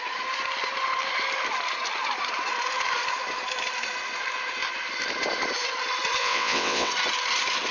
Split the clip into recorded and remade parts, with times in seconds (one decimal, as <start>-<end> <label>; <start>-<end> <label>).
0.0-6.2 recorded; 6.2-6.9 remade; 6.9-7.7 recorded